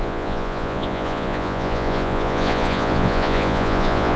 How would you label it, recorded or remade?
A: remade